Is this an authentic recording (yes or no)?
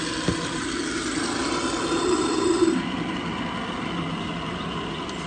yes